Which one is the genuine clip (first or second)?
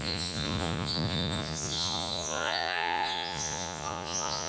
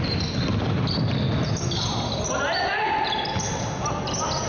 second